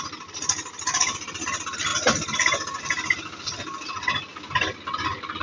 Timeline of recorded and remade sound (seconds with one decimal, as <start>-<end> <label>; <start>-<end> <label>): 0.0-5.4 recorded